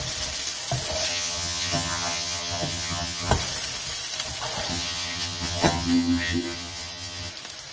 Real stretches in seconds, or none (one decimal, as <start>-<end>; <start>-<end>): 0.0-1.1; 3.3-4.7; 7.3-7.7